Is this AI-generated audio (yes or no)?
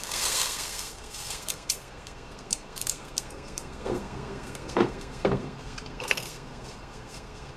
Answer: yes